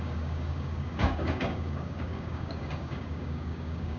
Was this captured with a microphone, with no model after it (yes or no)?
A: no